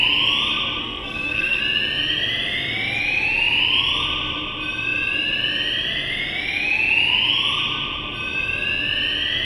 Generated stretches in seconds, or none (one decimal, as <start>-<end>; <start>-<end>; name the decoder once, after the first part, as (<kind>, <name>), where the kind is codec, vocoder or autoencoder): 0.8-1.6 (codec, SNAC)